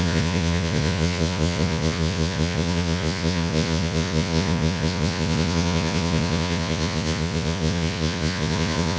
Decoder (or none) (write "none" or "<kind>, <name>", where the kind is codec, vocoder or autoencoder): vocoder, Vocos